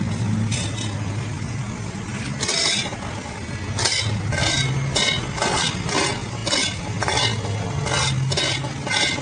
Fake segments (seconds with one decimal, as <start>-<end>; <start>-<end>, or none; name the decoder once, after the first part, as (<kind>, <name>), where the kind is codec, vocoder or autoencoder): none